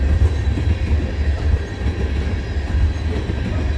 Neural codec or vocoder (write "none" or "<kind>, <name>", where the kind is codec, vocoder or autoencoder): none